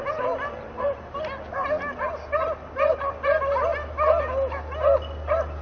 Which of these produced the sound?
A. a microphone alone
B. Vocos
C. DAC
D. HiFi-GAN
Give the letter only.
A